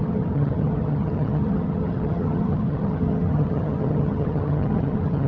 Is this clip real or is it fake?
fake